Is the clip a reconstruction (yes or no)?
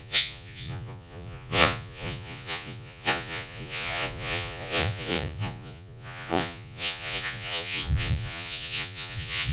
yes